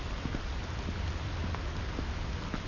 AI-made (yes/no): no